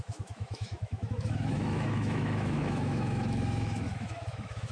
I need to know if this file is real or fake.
fake